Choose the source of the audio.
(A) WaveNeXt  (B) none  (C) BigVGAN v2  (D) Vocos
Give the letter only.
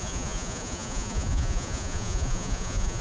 D